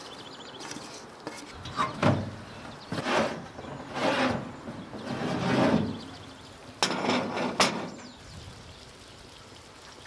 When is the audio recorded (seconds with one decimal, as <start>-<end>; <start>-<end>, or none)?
0.0-10.1